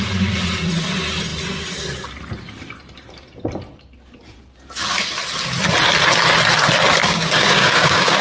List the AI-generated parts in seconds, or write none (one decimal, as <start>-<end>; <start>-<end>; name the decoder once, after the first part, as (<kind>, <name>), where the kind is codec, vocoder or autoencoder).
7.0-8.2 (codec, DAC)